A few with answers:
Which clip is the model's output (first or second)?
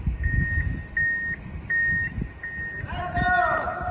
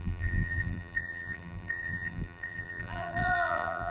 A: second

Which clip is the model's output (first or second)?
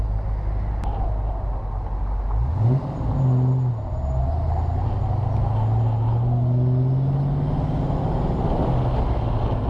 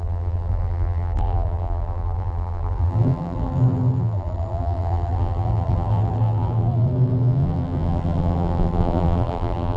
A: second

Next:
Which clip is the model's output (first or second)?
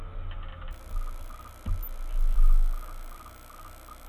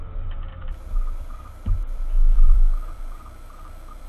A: second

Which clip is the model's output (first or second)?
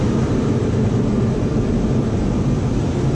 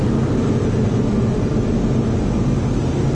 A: first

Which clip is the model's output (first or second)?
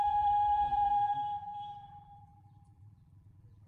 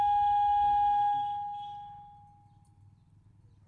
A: first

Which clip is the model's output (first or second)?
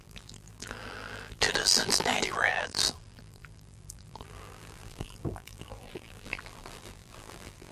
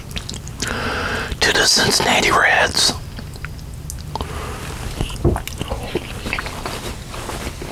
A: first